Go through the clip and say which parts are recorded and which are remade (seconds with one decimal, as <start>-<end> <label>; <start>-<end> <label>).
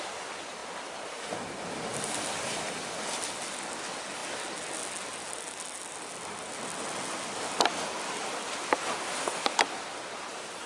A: 0.0-10.7 recorded